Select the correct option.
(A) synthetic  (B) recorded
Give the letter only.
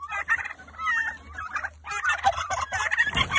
B